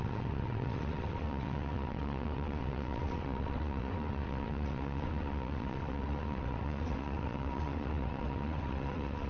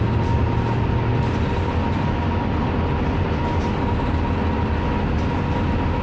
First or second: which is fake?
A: first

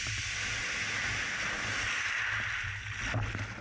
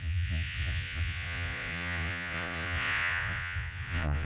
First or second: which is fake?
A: second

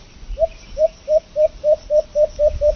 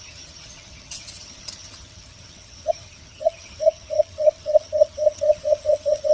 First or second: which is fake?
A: second